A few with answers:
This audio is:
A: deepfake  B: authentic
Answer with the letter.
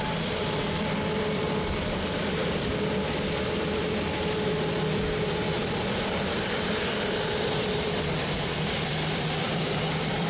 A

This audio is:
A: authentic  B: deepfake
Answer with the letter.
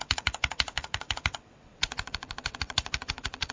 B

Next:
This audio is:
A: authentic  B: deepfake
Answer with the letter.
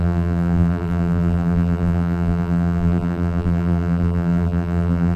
B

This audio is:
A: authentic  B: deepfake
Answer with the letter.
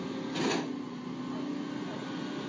A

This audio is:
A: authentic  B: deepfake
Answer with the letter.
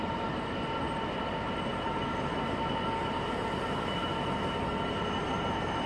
B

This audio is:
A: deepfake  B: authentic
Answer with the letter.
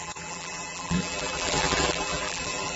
A